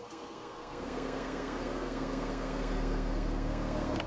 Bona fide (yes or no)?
no